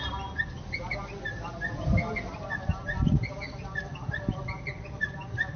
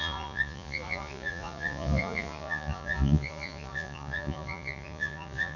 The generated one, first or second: second